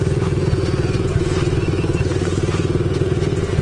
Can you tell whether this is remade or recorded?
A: remade